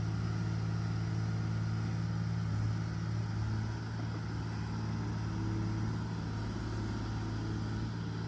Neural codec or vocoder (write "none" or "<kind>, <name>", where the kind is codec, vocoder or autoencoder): none